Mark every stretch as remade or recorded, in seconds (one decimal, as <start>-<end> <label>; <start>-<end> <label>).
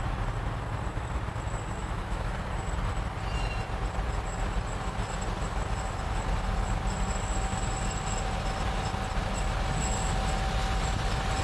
0.0-1.8 recorded; 1.8-2.3 remade; 2.3-11.4 recorded